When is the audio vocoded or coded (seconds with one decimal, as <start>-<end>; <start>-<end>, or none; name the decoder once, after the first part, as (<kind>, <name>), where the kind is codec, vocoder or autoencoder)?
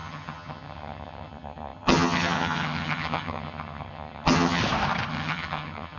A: 0.0-4.6 (vocoder, HiFi-GAN); 5.1-6.0